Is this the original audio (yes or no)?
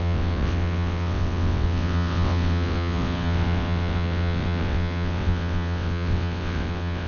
no